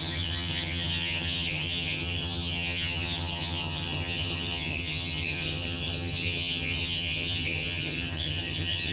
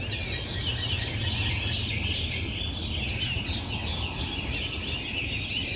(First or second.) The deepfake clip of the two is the first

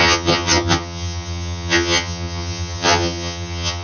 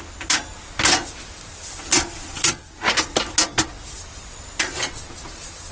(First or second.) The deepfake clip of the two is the first